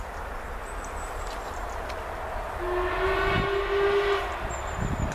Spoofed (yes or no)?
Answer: no